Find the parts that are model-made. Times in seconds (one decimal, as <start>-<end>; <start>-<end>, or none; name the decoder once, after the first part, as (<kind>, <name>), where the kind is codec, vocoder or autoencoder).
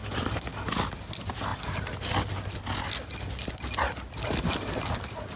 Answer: none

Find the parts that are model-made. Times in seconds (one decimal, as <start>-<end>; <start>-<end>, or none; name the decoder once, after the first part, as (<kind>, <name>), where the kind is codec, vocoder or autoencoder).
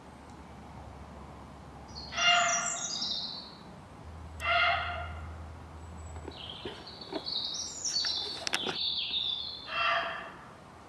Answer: none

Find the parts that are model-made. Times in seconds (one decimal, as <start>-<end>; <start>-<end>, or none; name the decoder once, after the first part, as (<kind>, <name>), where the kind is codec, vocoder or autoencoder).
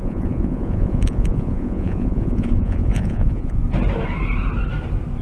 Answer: 0.0-3.6 (vocoder, Vocos)